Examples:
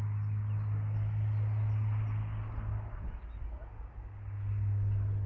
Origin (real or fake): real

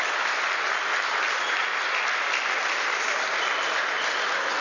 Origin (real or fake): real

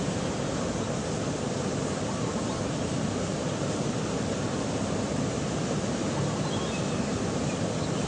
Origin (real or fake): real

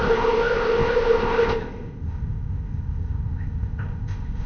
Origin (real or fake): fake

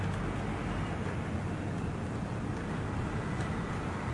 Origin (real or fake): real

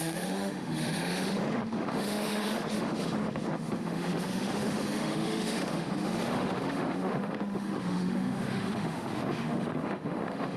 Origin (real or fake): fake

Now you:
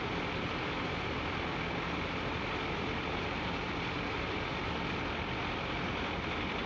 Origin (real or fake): real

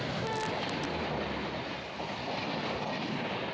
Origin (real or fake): real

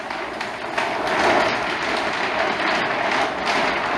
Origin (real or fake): real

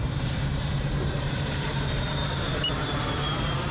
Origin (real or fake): fake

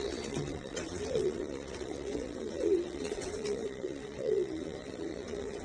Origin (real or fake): fake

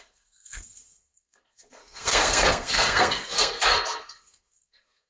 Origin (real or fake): fake